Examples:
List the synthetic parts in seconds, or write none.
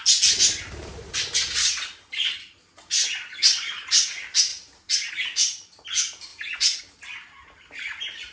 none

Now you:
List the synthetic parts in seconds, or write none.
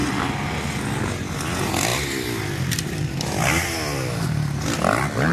none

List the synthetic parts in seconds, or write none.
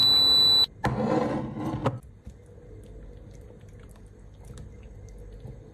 none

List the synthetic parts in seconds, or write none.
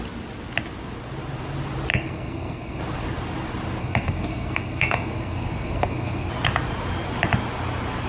1.9-2.8; 3.8-6.3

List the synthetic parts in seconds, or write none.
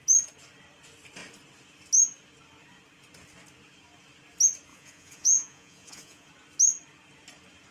4.7-6.3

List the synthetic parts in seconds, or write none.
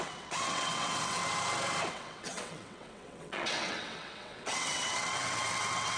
0.0-1.2; 1.9-6.0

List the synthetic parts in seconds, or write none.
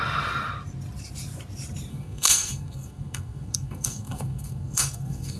1.9-5.4